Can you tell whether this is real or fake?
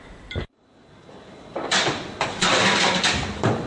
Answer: fake